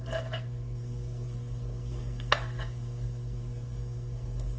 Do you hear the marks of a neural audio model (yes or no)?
yes